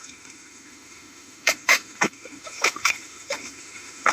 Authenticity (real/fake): fake